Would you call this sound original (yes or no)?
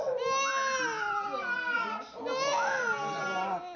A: yes